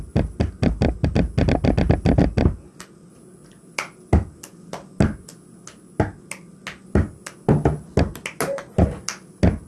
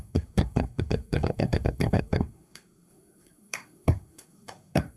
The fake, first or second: second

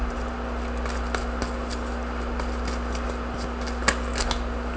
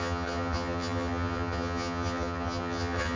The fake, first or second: second